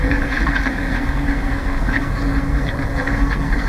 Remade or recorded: remade